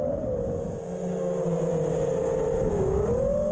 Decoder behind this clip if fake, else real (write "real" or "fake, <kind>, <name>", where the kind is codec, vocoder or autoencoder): real